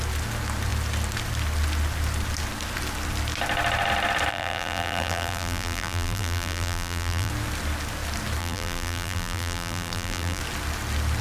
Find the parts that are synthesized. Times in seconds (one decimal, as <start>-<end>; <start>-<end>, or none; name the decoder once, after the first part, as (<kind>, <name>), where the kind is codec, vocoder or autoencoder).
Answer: 4.3-7.3 (vocoder, BigVGAN v2); 8.4-10.4

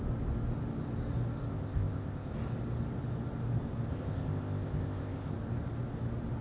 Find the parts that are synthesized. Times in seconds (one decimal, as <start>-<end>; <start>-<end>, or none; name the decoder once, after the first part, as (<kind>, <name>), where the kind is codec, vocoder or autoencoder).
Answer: 1.5-2.3 (codec, ZipCodec); 3.9-5.3

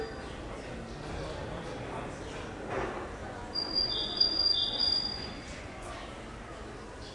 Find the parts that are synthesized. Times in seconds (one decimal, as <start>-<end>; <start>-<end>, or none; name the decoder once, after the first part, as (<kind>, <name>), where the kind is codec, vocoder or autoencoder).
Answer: 3.2-5.9 (vocoder, Vocos)

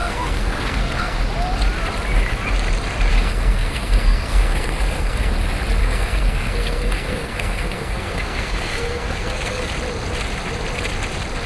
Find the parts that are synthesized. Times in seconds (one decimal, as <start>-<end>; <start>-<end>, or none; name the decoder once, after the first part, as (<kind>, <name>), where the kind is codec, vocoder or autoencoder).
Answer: 0.0-1.2 (codec, SNAC); 3.1-5.3; 5.8-9.7

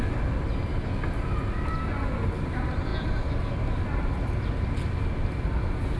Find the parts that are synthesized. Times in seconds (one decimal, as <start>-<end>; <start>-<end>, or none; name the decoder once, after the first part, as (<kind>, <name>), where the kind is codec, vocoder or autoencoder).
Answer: none

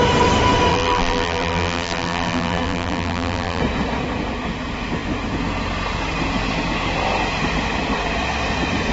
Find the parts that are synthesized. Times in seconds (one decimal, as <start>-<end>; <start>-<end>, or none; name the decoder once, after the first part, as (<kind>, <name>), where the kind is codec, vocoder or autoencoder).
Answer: 0.7-3.6 (vocoder, BigVGAN v2)